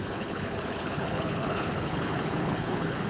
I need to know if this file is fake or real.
fake